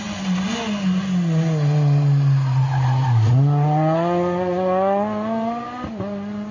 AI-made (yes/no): no